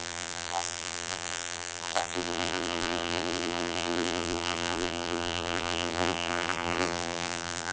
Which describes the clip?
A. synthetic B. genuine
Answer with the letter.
A